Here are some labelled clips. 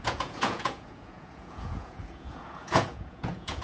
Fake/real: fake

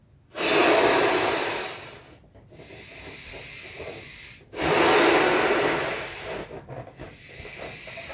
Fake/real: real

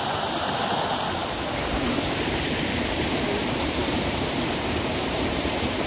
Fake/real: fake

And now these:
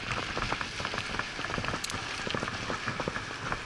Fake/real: real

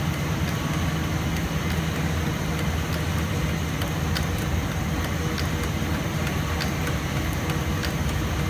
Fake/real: real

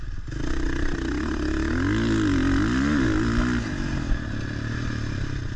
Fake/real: real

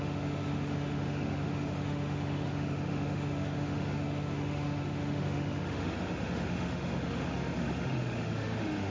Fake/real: fake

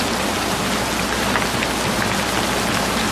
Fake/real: real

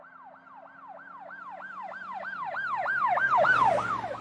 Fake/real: real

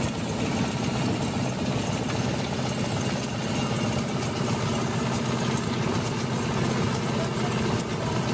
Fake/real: real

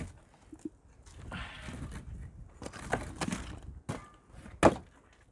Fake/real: real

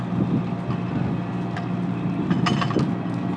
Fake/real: real